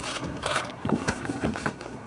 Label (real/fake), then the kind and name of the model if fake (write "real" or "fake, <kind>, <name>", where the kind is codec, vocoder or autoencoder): fake, codec, SNAC